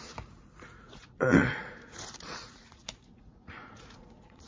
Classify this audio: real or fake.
fake